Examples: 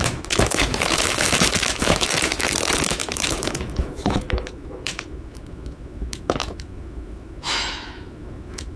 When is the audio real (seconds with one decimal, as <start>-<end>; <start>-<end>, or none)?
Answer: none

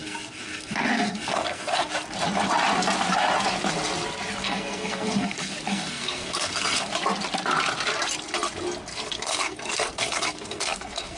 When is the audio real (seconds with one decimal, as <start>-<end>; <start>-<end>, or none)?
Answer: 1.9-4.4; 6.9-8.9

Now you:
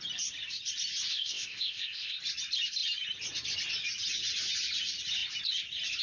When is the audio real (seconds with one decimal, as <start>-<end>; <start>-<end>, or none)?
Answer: 0.0-1.1; 2.2-6.0

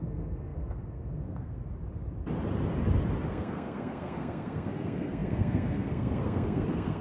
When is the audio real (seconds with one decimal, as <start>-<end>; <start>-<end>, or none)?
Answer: 1.7-3.3

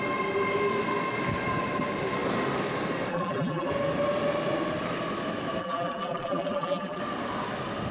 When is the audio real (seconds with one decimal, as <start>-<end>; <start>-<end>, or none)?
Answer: 0.0-3.1; 3.7-5.6; 7.0-7.9